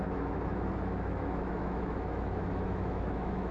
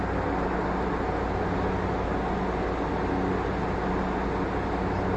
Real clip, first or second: second